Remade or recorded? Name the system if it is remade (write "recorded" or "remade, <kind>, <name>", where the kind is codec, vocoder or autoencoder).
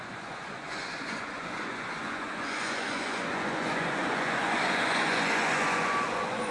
remade, vocoder, Vocos